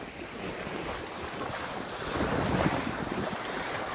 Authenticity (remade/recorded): recorded